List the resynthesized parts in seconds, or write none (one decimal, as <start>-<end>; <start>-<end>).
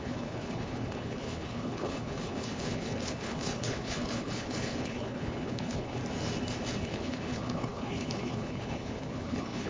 0.0-6.0; 6.8-9.7